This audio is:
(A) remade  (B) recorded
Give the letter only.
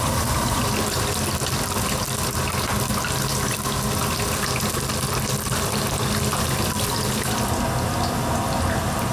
B